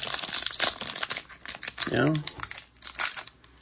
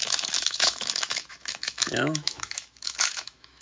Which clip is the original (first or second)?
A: first